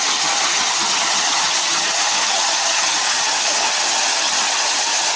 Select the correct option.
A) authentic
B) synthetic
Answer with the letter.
B